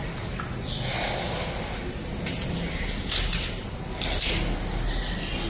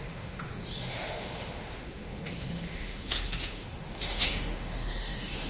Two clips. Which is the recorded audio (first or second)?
first